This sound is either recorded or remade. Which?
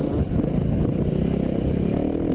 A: recorded